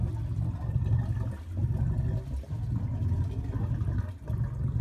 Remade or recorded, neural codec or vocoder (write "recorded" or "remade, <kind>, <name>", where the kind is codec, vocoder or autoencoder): recorded